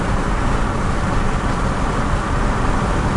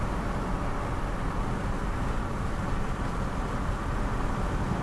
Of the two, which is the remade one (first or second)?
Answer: first